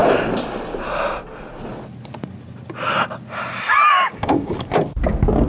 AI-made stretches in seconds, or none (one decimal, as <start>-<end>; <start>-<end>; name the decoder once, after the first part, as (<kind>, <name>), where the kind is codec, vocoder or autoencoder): 3.9-4.5 (codec, DAC)